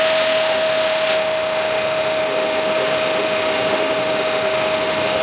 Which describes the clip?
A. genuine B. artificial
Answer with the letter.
B